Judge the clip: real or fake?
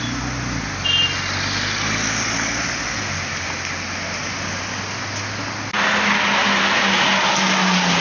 real